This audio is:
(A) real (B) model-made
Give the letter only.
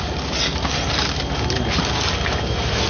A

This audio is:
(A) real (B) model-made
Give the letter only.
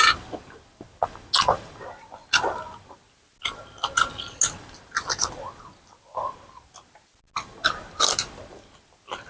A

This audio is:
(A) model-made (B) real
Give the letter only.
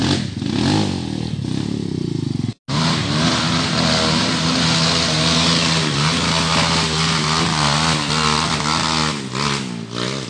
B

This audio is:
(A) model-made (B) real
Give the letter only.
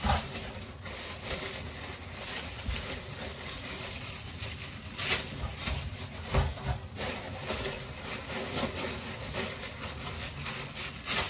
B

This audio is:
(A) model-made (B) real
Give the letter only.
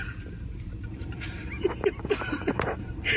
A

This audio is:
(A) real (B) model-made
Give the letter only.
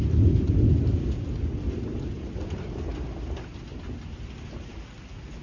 A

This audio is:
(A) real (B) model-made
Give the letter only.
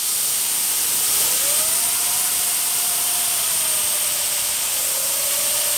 A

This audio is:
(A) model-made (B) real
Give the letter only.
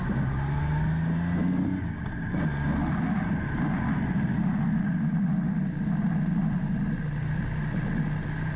B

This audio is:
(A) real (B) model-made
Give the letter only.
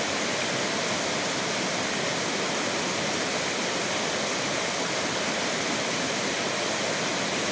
A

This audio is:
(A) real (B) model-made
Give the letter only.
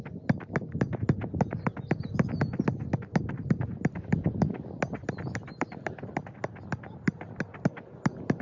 A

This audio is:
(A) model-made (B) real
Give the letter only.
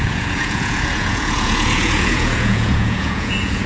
A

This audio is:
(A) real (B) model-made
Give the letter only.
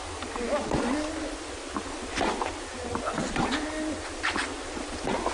A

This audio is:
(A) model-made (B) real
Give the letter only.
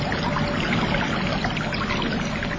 B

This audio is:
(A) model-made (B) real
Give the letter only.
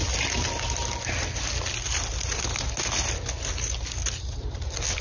B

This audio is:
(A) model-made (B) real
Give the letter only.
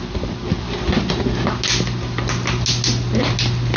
B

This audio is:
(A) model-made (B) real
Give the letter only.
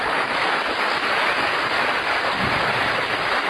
B